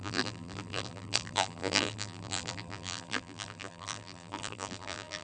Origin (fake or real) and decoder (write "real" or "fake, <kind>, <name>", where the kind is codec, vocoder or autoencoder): fake, vocoder, BigVGAN v2